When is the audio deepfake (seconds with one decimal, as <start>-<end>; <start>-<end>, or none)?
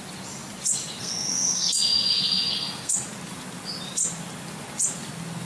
1.0-2.9